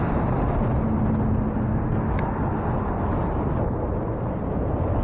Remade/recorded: recorded